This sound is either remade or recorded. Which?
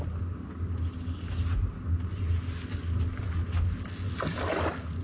recorded